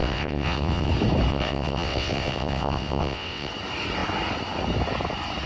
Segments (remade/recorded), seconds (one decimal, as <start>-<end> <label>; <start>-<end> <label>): 0.0-0.9 remade; 0.9-1.3 recorded; 1.3-3.5 remade; 3.5-5.5 recorded